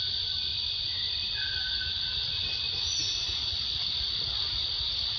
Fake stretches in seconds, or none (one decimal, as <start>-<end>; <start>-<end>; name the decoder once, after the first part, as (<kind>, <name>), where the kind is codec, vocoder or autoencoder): none